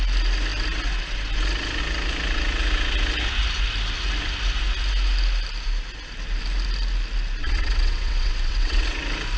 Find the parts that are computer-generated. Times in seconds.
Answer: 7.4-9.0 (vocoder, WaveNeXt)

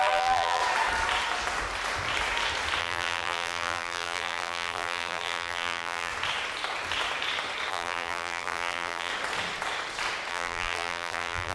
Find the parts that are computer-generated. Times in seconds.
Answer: 0.0-0.6 (vocoder, BigVGAN v2); 2.8-6.1; 7.7-9.1; 10.3-11.5